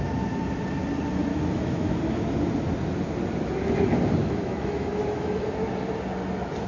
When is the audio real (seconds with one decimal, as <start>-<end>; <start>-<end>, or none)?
0.0-1.3; 2.3-4.2; 5.7-6.7